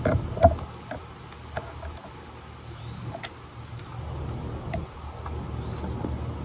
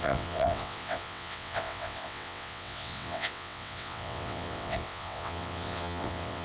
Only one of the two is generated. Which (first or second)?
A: second